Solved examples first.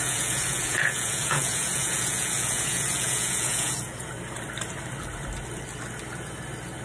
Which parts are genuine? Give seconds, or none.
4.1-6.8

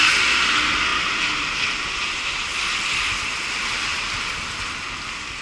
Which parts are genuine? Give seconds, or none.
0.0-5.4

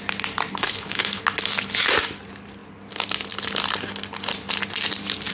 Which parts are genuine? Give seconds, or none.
0.0-0.5; 1.2-5.3